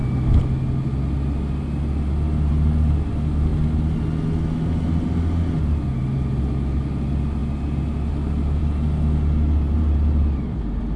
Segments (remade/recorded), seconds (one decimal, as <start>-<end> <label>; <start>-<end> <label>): 0.0-11.0 recorded